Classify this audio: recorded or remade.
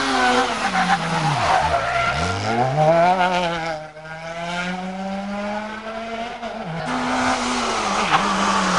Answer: recorded